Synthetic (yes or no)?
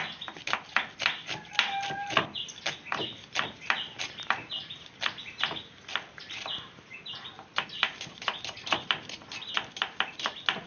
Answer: no